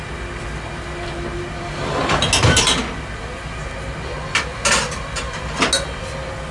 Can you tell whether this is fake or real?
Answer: real